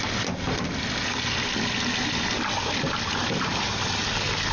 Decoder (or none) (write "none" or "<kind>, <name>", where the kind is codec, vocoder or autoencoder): none